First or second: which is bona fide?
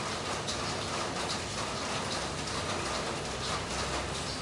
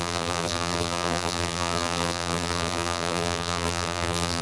first